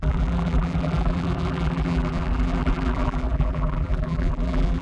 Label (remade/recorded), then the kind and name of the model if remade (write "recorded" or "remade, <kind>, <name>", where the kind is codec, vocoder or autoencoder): remade, vocoder, BigVGAN v2